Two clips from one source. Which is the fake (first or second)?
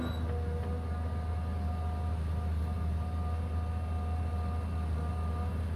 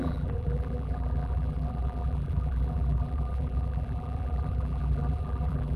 second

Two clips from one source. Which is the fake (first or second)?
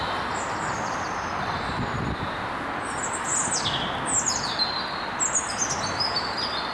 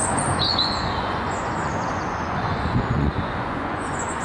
second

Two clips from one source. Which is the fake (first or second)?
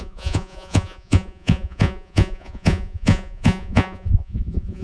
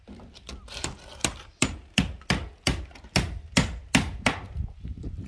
first